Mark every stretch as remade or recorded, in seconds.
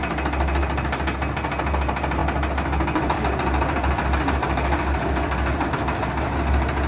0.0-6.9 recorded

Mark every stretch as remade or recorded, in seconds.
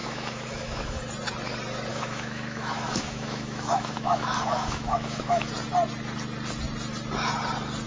0.0-1.0 remade; 1.0-1.9 recorded; 1.9-5.5 remade; 5.5-7.9 recorded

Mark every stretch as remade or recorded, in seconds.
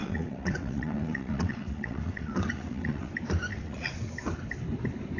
0.0-3.1 remade; 3.1-3.5 recorded; 3.5-4.1 remade; 4.1-5.2 recorded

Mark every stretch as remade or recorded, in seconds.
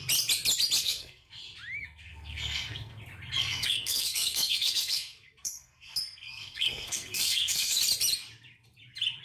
0.0-0.8 recorded; 0.8-1.4 remade; 1.4-1.8 recorded; 1.8-3.0 remade; 3.0-3.4 recorded; 3.4-7.8 remade; 7.8-9.2 recorded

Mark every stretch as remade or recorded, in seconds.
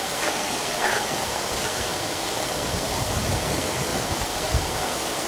0.0-5.3 remade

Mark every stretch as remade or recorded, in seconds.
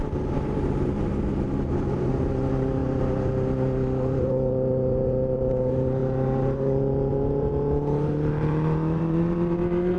0.0-1.1 remade; 1.1-1.7 recorded; 1.7-2.8 remade; 2.8-4.3 recorded; 4.3-10.0 remade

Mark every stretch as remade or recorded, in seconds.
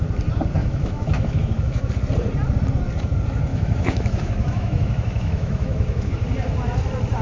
0.0-0.6 recorded; 0.6-1.9 remade; 1.9-3.5 recorded; 3.5-6.1 remade; 6.1-7.2 recorded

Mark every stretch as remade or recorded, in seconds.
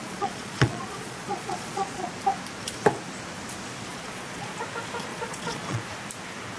0.0-2.1 remade; 2.1-3.9 recorded; 3.9-4.6 remade; 4.6-5.1 recorded; 5.1-5.8 remade; 5.8-6.6 recorded